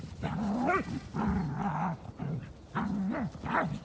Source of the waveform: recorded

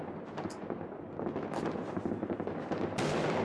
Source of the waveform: recorded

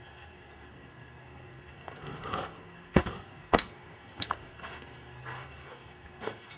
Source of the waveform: remade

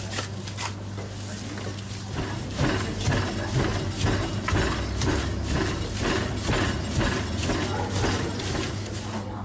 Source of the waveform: recorded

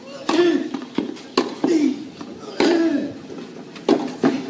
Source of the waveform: recorded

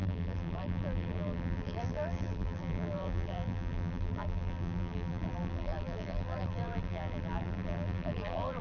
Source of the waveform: remade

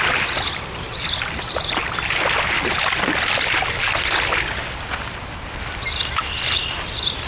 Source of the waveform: recorded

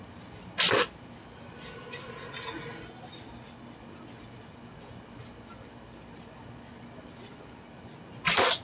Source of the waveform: recorded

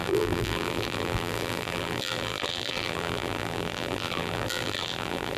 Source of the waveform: remade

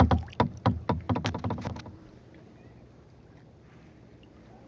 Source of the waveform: recorded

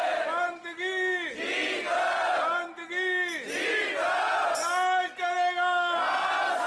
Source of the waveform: recorded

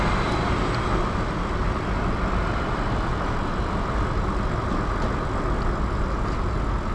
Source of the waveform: recorded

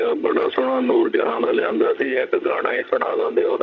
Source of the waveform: remade